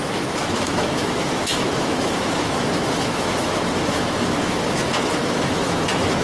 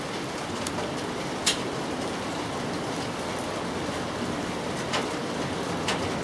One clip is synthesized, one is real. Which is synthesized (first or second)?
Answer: first